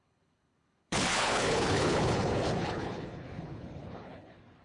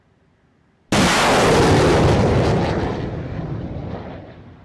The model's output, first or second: first